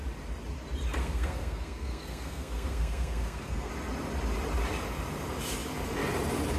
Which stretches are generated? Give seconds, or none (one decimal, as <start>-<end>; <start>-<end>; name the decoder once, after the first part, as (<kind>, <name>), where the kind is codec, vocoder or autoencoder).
1.0-3.7 (codec, SNAC)